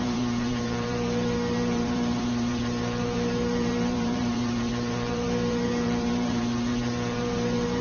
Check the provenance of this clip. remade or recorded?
remade